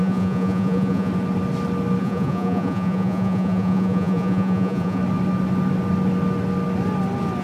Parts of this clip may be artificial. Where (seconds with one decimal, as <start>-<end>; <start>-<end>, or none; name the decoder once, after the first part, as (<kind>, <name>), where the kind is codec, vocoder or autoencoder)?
0.0-1.1 (vocoder, Vocos); 2.0-5.0